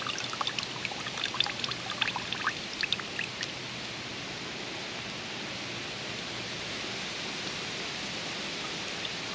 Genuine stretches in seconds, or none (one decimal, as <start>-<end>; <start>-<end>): 0.0-9.3